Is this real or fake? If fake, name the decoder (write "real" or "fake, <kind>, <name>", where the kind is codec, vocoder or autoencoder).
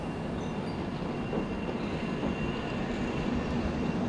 real